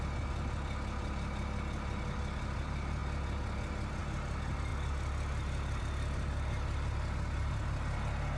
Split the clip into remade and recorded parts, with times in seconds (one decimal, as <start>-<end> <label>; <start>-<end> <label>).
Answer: 0.0-8.4 recorded